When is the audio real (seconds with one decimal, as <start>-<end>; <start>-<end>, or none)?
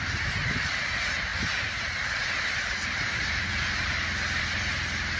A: 0.0-5.2